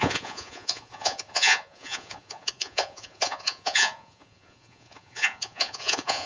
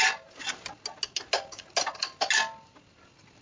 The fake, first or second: first